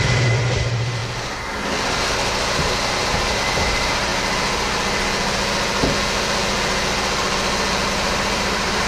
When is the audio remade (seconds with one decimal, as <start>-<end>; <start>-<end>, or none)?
0.0-1.0; 2.9-4.1; 7.9-8.9